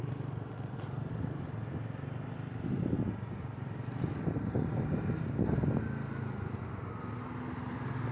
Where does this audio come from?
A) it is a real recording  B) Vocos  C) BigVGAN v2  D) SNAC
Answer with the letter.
A